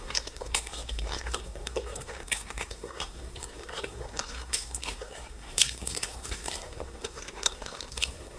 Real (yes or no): no